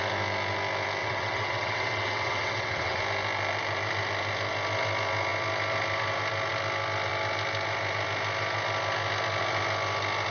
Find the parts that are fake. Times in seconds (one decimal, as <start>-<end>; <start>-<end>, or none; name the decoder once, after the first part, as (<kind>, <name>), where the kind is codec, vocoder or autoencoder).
1.0-3.0 (vocoder, WaveNeXt)